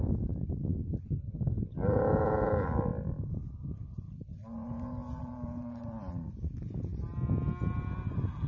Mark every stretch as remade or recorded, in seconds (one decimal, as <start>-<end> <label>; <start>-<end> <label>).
0.0-8.5 recorded